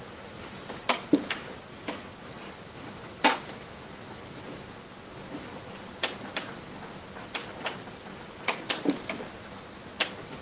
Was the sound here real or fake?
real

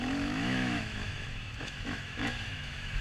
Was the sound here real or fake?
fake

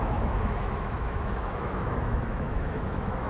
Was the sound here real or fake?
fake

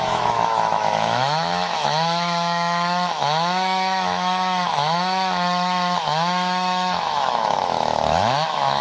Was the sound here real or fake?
fake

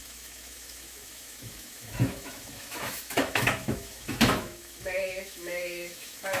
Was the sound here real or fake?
fake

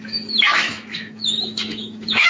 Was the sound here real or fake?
fake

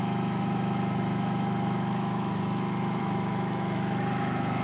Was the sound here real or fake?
fake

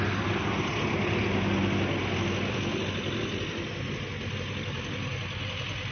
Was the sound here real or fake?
real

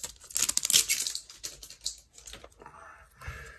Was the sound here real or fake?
real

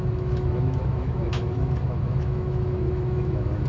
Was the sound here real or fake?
fake